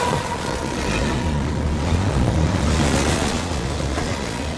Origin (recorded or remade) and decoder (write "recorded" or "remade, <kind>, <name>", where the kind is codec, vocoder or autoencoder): remade, vocoder, Vocos